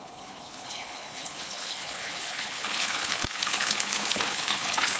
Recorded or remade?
remade